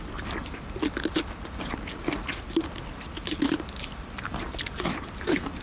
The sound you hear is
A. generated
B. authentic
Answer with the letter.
B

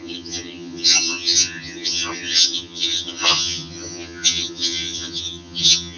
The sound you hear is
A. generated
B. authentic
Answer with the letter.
A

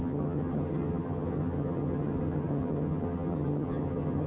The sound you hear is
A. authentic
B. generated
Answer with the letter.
B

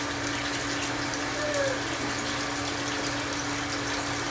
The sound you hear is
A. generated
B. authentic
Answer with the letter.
B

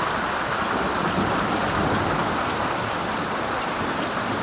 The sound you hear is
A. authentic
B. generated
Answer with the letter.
A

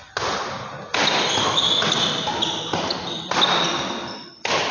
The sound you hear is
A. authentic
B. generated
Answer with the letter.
A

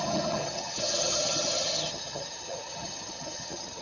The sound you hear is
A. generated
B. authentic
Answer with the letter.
A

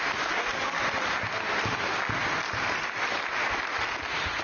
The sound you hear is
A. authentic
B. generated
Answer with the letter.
A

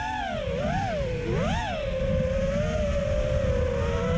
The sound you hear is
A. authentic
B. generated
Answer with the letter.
A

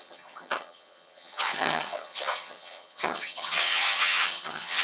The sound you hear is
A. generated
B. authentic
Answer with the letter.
A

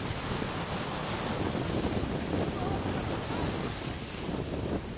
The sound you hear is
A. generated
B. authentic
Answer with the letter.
B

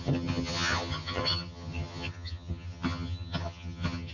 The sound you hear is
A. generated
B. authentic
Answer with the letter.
A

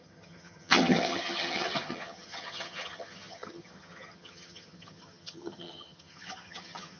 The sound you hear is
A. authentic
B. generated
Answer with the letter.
B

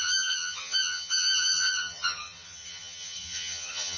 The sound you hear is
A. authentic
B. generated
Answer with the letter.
B